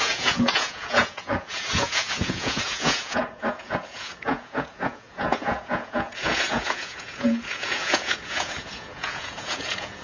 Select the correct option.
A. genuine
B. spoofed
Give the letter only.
B